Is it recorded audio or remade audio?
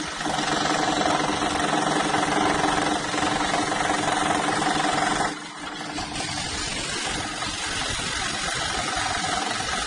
recorded